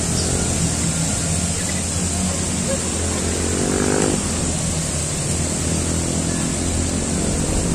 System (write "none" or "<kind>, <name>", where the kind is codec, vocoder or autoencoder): none